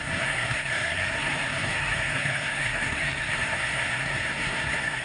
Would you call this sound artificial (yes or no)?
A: yes